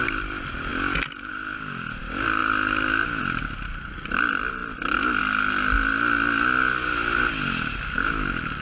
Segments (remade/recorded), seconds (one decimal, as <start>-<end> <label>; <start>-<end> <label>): 0.0-8.6 recorded